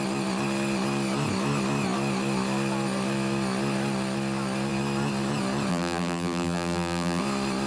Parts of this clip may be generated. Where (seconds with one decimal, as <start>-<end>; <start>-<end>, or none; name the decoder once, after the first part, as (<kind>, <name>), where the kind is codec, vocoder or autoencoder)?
5.7-7.2 (vocoder, BigVGAN v2)